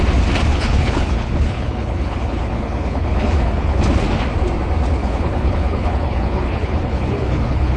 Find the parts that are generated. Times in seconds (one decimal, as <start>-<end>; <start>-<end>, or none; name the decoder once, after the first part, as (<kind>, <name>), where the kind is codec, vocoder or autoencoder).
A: 0.5-3.8 (codec, HILCodec); 5.0-7.8